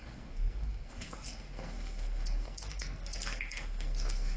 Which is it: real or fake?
fake